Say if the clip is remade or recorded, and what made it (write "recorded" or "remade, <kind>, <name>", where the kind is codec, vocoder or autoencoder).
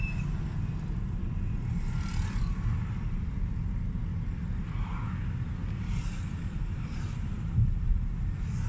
recorded